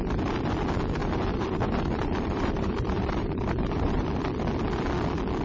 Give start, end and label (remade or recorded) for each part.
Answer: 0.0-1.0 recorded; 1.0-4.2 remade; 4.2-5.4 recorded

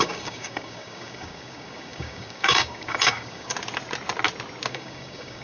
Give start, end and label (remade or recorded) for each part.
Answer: 0.0-3.5 remade; 3.5-4.7 recorded; 4.7-5.4 remade

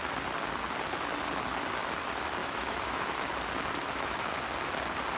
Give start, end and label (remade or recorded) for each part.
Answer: 0.0-2.4 recorded; 2.4-3.1 remade; 3.1-3.8 recorded; 3.8-4.3 remade; 4.3-5.2 recorded